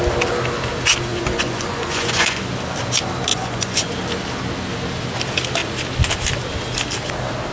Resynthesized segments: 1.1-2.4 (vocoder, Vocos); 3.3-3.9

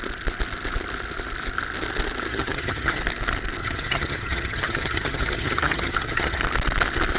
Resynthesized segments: 2.3-3.0 (vocoder, HiFi-GAN); 3.6-6.4